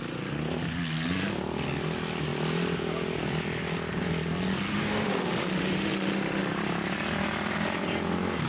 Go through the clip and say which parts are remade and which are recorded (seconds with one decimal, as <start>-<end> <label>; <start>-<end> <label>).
0.0-4.7 recorded; 4.7-6.5 remade; 6.5-8.5 recorded